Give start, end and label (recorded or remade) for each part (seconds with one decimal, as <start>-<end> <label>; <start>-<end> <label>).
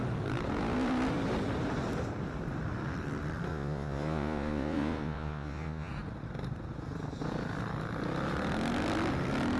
0.0-3.5 recorded; 3.5-5.9 remade; 5.9-9.6 recorded